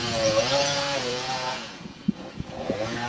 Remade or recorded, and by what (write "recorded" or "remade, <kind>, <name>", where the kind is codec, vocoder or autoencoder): remade, vocoder, Vocos